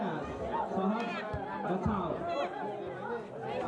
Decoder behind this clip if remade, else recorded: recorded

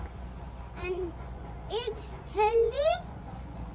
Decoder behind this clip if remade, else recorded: remade, vocoder, Vocos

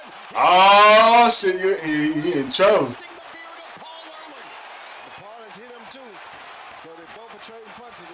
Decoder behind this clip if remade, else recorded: recorded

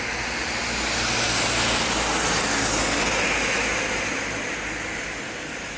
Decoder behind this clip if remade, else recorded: recorded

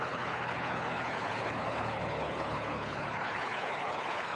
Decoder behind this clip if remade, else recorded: remade, codec, HILCodec